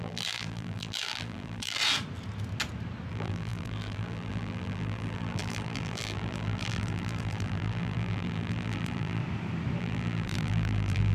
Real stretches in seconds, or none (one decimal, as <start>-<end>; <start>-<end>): 1.8-3.1; 9.2-9.8